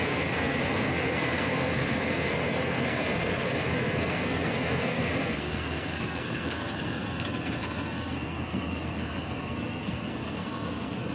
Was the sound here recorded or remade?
remade